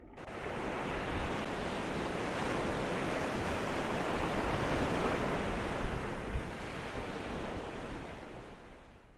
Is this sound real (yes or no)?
yes